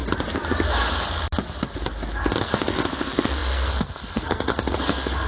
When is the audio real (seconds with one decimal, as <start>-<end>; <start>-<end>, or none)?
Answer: 0.0-2.4